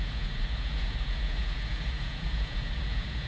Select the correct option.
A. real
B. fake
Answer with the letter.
B